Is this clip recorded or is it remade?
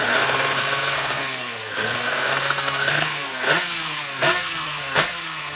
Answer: remade